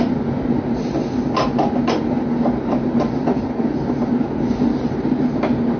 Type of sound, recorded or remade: recorded